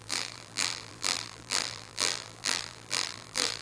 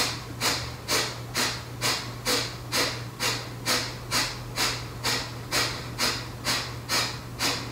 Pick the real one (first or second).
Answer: second